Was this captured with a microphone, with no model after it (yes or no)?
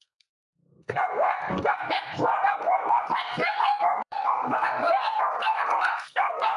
no